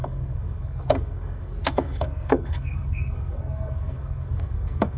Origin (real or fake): fake